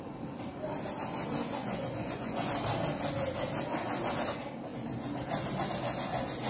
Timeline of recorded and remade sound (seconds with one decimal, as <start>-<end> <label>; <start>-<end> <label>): 0.0-1.6 recorded; 1.6-2.5 remade; 2.5-6.5 recorded